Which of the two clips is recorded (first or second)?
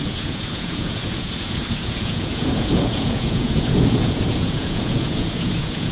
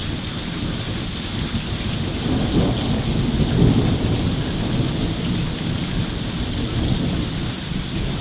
second